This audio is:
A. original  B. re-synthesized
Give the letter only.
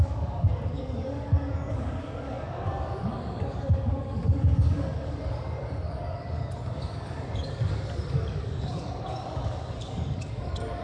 B